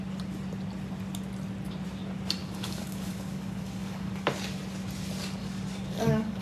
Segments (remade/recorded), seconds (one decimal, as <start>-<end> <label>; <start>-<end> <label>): 0.0-2.4 recorded; 2.4-4.3 remade; 4.3-5.4 recorded; 5.4-6.4 remade